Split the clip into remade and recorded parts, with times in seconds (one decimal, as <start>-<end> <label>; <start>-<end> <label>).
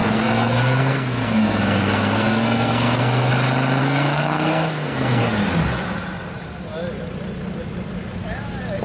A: 0.0-3.3 remade; 3.3-3.8 recorded; 3.8-5.2 remade; 5.2-8.8 recorded